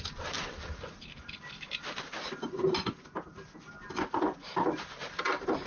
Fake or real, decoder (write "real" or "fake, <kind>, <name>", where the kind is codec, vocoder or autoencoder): real